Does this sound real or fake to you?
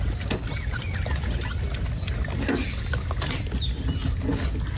real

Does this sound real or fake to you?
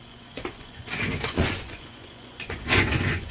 fake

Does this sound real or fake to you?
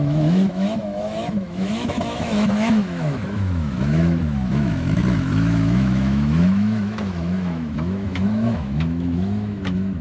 fake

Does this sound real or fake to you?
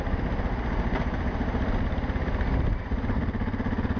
real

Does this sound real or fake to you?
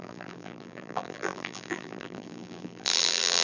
fake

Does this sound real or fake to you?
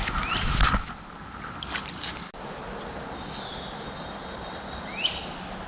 real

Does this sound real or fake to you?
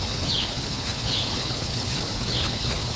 fake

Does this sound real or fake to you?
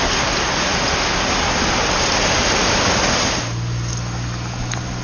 real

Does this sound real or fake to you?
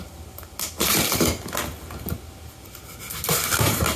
real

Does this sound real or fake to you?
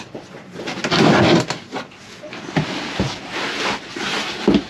real